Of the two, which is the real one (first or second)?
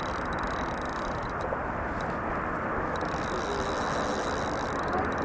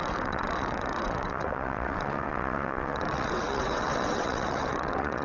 first